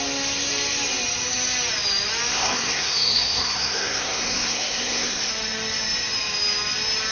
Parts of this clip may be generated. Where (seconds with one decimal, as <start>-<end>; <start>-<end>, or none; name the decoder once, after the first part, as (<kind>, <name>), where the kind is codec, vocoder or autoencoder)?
2.3-5.3 (codec, SNAC)